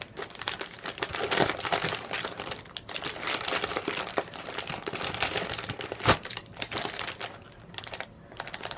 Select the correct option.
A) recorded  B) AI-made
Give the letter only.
B